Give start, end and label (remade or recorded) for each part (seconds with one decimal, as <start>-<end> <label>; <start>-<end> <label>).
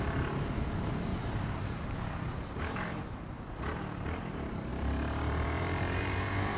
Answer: 0.0-1.1 recorded; 1.1-3.0 remade; 3.0-4.7 recorded; 4.7-6.6 remade